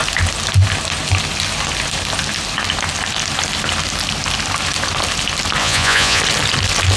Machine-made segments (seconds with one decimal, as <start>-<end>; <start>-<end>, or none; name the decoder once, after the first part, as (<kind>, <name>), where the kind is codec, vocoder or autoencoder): 5.6-6.2 (vocoder, Vocos)